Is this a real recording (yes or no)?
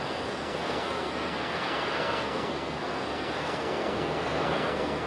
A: no